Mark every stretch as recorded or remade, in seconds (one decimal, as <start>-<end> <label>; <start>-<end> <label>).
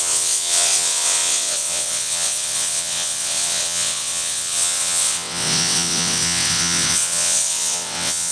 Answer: 0.0-8.3 remade